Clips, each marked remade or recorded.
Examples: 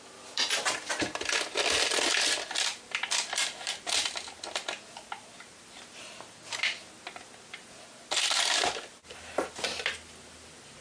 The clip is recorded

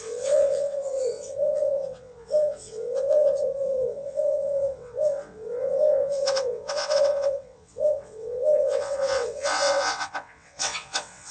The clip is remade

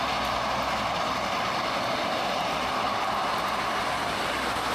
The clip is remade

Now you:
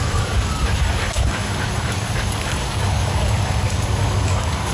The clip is remade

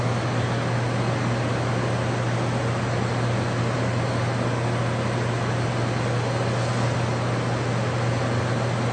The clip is recorded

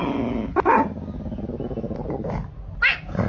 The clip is recorded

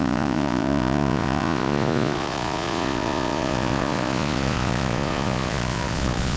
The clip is remade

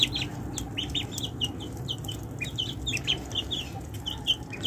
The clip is recorded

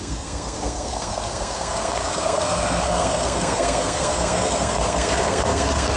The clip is remade